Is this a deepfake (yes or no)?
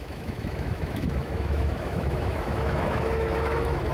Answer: yes